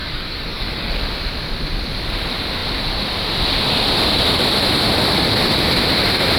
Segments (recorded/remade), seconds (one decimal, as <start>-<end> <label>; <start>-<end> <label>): 0.0-0.9 remade; 0.9-6.4 recorded